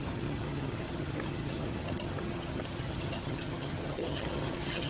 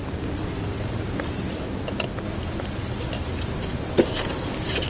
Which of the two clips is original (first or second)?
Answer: second